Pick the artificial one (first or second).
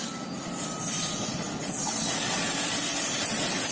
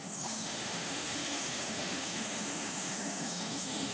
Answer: second